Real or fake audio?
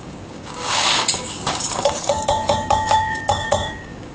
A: fake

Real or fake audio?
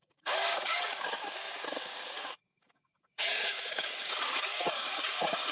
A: fake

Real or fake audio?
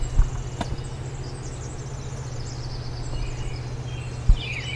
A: real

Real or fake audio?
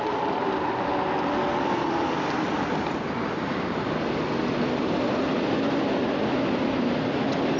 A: real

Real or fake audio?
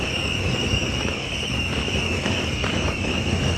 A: fake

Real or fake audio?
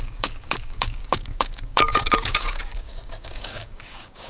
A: fake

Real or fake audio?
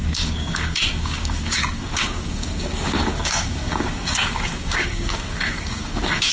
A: fake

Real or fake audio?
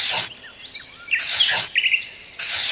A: real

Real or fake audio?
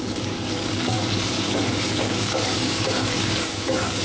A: fake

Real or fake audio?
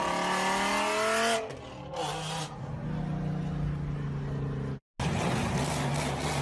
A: real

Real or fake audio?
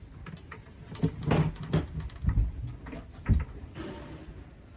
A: real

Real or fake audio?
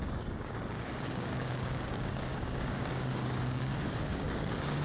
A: fake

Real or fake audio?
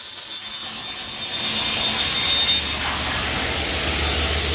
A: real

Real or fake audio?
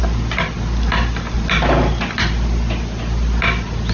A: real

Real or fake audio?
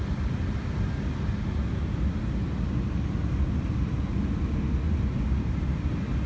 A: real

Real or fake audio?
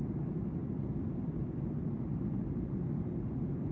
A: real